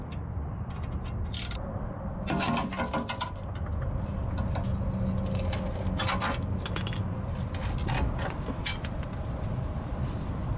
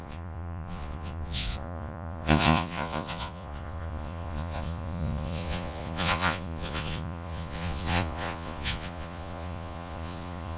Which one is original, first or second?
first